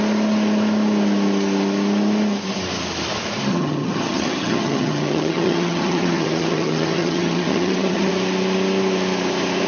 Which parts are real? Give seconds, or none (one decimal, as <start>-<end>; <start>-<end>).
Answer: 0.0-3.5; 8.1-9.7